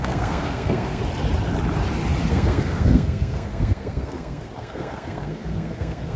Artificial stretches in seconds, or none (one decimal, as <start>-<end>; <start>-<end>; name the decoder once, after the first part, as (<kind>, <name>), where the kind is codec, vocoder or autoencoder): 0.0-1.0 (codec, SNAC); 2.3-6.2